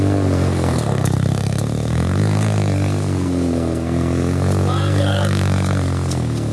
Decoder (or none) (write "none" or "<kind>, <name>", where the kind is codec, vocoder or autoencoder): codec, SNAC